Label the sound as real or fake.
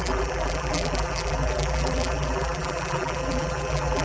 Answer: fake